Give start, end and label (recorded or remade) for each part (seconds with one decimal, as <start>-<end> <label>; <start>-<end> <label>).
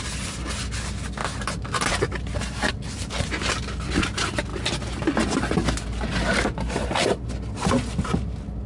0.0-8.7 recorded